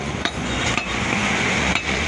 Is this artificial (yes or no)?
yes